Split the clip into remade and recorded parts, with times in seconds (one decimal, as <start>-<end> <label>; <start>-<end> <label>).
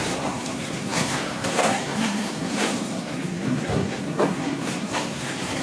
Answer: 0.0-5.6 remade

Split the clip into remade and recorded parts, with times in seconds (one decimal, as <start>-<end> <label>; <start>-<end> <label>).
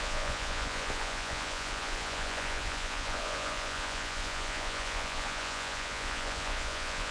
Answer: 0.0-7.1 remade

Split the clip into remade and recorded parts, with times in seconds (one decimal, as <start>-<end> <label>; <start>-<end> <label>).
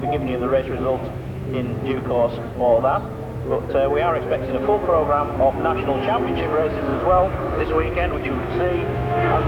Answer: 0.0-1.4 remade; 1.4-4.2 recorded; 4.2-9.5 remade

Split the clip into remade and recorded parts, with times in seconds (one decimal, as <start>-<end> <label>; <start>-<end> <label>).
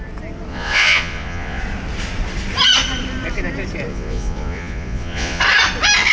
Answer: 0.0-0.5 recorded; 0.5-1.6 remade; 1.6-3.9 recorded; 3.9-5.4 remade; 5.4-6.1 recorded